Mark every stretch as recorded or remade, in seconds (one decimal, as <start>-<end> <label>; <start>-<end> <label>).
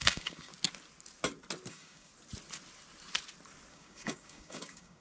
0.0-0.5 remade; 0.5-1.7 recorded; 1.7-2.1 remade; 2.1-3.7 recorded; 3.7-5.0 remade